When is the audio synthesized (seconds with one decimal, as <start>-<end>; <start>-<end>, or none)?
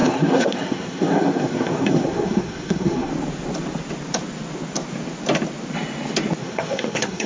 0.0-3.1; 6.4-7.3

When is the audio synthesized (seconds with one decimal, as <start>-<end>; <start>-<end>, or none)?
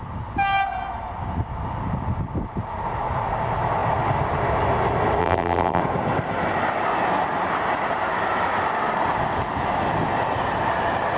5.2-5.8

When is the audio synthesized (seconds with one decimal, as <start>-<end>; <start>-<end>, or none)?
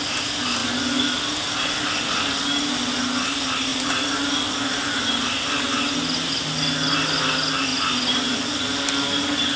7.7-8.4